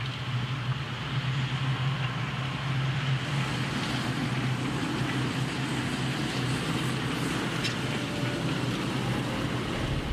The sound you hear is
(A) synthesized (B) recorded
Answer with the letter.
B